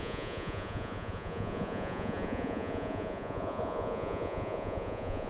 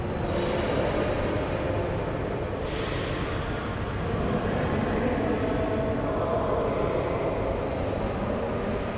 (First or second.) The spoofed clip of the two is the first